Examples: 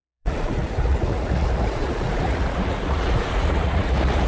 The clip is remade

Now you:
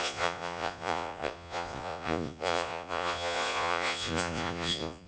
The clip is remade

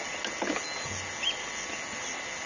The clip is recorded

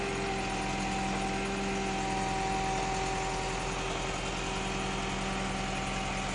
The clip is recorded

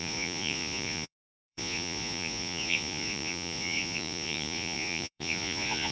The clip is remade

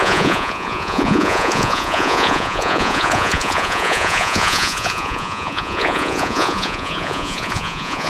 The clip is remade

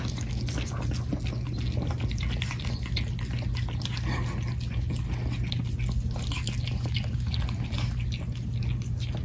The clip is recorded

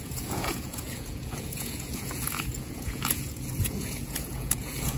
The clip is remade